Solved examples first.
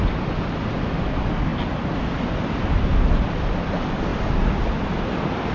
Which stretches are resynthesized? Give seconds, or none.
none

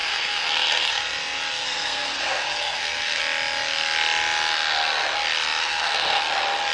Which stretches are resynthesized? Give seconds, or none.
0.0-1.0 (codec, SNAC); 1.6-3.2; 5.6-6.2